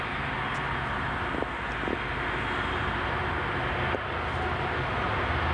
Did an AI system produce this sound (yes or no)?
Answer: no